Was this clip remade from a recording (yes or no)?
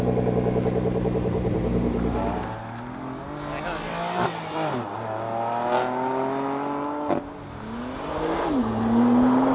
no